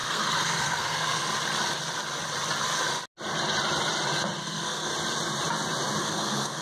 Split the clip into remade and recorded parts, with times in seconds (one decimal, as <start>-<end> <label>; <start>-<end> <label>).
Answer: 0.0-1.2 remade; 1.2-4.4 recorded; 4.4-4.9 remade; 4.9-6.0 recorded; 6.0-6.6 remade